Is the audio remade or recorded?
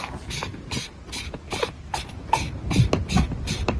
recorded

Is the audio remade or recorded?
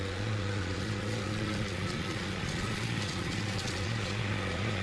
remade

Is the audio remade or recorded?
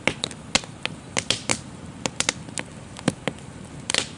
recorded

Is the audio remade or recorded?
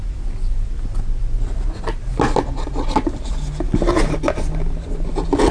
recorded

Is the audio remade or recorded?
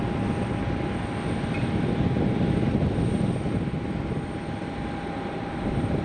recorded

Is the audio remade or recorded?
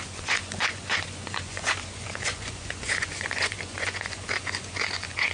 remade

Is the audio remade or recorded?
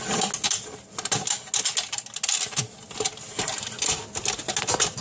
recorded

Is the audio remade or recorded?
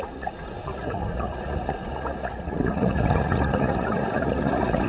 remade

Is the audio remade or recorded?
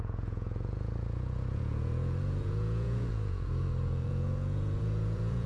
remade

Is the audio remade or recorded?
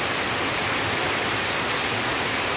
recorded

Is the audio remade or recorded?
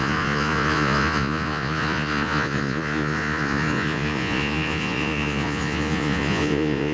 remade